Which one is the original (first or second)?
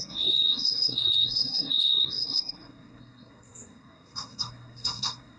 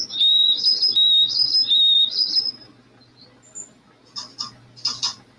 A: second